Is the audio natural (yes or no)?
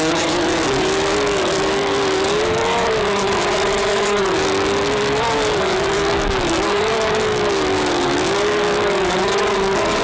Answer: no